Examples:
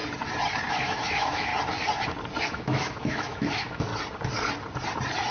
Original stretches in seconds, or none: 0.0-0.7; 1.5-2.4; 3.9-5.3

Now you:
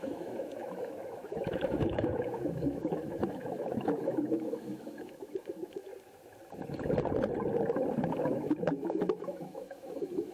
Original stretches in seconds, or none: 5.9-8.0

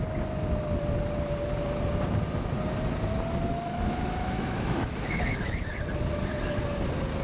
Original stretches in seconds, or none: 0.0-3.5; 5.6-7.2

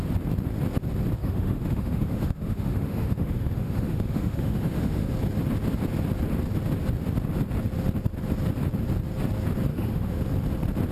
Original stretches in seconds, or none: 0.0-1.2; 5.1-9.7; 10.2-10.9

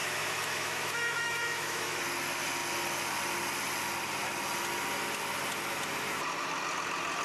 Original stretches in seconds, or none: 2.0-7.2

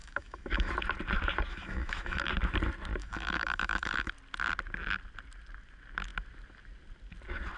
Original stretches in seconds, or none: 0.7-1.5; 2.3-3.0; 4.1-7.6

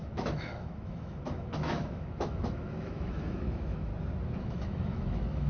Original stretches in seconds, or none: 3.9-4.4